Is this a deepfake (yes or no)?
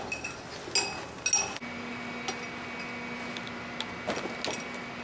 no